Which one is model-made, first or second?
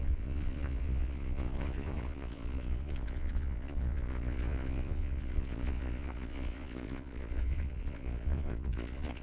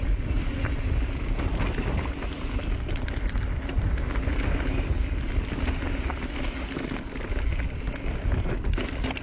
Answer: first